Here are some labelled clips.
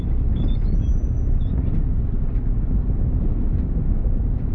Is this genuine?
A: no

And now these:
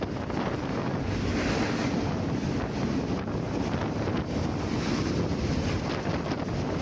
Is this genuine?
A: yes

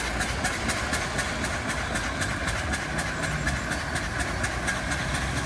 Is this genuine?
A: yes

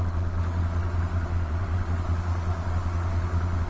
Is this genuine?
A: no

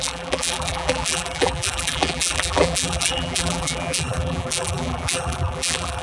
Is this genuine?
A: no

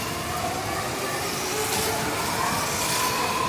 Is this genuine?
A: yes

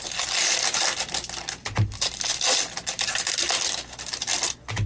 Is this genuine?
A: yes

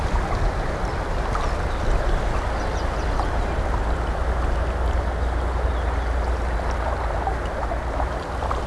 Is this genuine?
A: yes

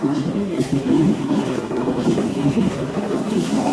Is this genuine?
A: no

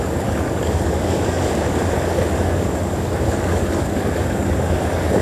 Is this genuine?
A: no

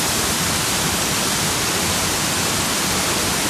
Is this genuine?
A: yes